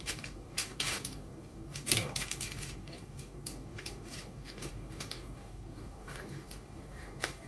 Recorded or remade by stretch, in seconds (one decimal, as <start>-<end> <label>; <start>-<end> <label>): 0.0-7.5 remade